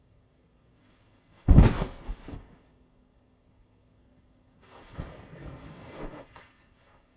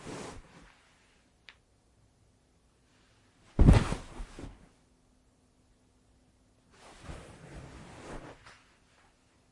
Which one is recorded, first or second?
second